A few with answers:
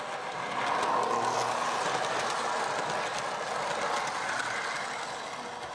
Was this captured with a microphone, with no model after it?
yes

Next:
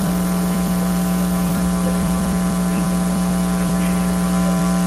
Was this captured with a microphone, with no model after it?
no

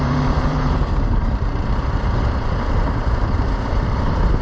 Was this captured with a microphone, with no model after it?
no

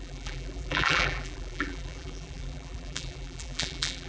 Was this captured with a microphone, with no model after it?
no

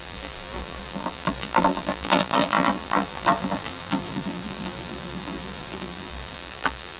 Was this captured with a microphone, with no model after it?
no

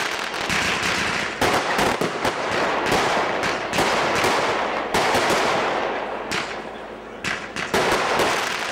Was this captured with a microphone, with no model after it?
yes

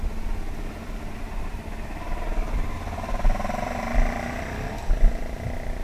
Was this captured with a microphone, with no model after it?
no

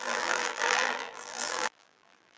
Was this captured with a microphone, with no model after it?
no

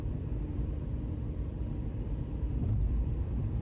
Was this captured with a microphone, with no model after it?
no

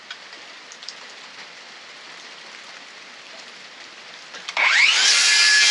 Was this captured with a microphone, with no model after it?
no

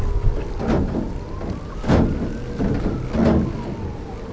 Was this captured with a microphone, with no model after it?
yes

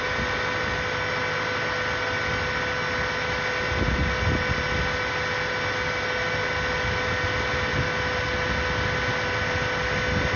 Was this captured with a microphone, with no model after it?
yes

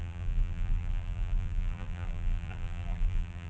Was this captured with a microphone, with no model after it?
no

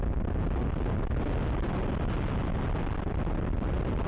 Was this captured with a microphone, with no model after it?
yes